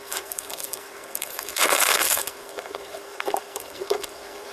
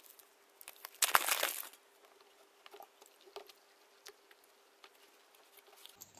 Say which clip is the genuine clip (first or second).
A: second